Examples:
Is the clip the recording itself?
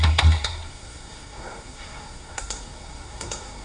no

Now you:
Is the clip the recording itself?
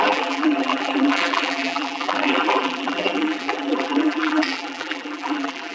no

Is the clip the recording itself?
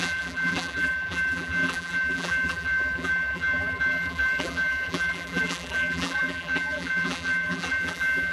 no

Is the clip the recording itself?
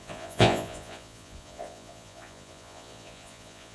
no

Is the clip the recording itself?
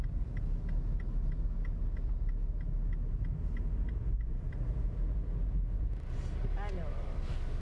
yes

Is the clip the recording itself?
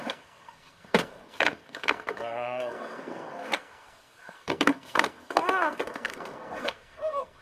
no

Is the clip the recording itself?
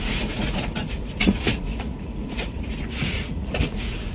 no